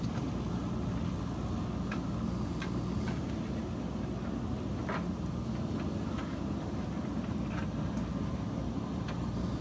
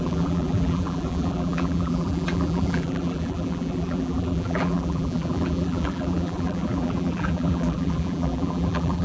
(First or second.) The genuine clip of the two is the first